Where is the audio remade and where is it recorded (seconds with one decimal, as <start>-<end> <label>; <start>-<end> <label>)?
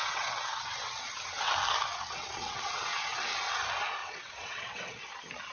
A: 0.0-1.5 remade; 1.5-1.9 recorded; 1.9-3.2 remade; 3.2-4.0 recorded; 4.0-5.0 remade; 5.0-5.5 recorded